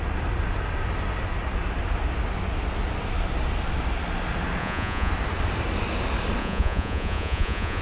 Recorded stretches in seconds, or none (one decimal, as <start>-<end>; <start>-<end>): 0.0-4.6; 5.1-6.4